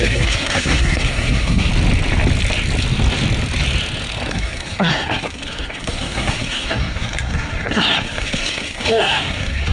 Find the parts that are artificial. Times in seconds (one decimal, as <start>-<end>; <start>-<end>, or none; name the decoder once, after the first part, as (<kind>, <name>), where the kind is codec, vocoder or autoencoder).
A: 0.0-1.7 (codec, SNAC); 4.3-9.7